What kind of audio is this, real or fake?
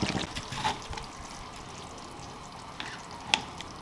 real